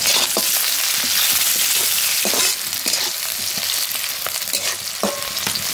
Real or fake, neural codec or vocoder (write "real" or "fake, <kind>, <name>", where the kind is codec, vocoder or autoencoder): real